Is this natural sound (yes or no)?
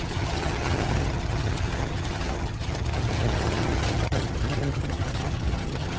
no